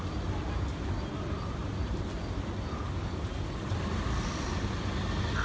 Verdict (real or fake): real